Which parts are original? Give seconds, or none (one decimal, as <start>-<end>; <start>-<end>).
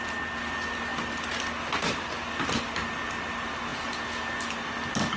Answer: 0.0-5.2